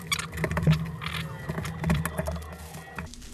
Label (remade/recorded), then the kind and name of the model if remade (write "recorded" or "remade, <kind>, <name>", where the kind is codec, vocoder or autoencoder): recorded